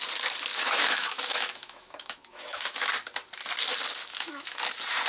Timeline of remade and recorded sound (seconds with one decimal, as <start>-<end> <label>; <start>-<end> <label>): 0.0-0.5 recorded; 0.5-2.9 remade; 2.9-4.0 recorded; 4.0-4.6 remade; 4.6-5.1 recorded